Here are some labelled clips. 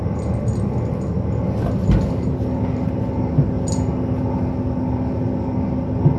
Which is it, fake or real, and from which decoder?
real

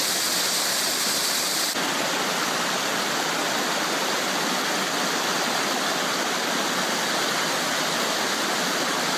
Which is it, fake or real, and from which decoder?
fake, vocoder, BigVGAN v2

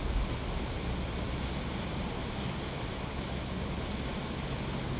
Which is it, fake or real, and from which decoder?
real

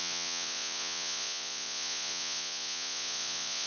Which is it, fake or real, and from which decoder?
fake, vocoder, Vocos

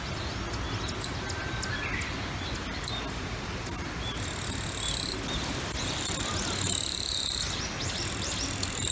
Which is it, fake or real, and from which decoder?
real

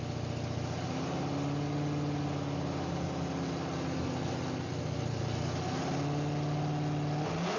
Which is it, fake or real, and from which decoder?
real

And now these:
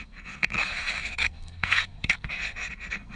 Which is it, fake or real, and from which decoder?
fake, codec, SNAC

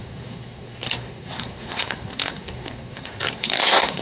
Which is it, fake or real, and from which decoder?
fake, codec, SNAC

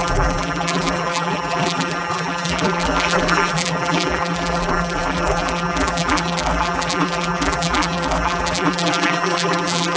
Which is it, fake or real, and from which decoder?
fake, vocoder, BigVGAN v2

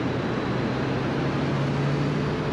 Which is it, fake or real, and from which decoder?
real